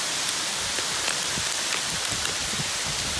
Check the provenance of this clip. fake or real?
fake